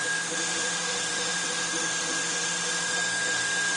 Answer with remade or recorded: remade